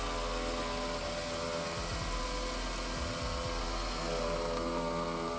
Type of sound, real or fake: real